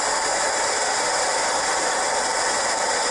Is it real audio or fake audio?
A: real